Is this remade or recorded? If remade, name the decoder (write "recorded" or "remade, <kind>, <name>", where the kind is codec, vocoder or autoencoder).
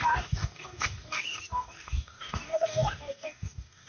remade, codec, DAC